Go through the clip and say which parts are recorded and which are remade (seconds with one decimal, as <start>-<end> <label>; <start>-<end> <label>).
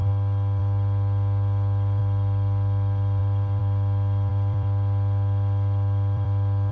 0.0-0.6 recorded; 0.6-6.7 remade